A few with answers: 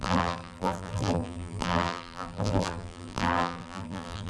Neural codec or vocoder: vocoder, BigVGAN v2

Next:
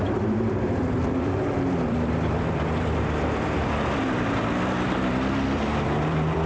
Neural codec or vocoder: vocoder, BigVGAN v2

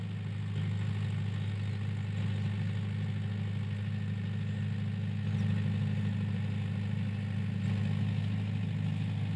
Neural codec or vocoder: none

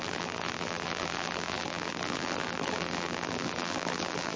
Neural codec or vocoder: vocoder, BigVGAN v2